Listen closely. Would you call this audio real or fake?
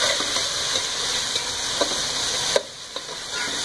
real